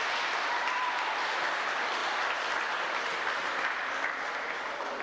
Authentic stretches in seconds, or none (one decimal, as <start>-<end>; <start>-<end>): 0.0-5.0